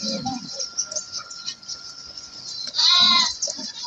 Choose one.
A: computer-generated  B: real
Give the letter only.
A